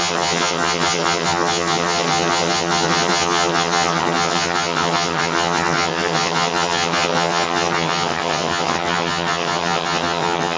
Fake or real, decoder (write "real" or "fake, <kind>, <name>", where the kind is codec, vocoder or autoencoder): fake, vocoder, HiFi-GAN